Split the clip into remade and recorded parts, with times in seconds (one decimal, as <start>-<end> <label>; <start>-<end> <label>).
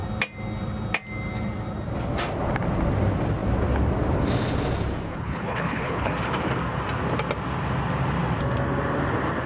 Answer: 0.0-5.1 recorded; 5.1-6.1 remade; 6.1-9.5 recorded